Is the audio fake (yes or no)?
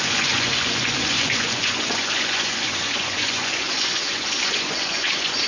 yes